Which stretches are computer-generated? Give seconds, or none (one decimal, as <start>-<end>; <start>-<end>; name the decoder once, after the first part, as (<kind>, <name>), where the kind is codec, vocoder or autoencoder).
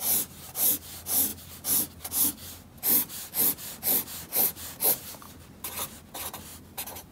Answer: 6.5-7.1 (vocoder, BigVGAN v2)